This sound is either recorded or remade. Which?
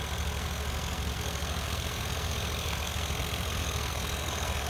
remade